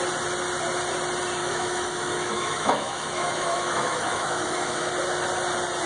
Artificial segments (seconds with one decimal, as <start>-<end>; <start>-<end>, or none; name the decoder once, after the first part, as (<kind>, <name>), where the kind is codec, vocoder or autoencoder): 1.4-4.9 (autoencoder, DAC-VAE)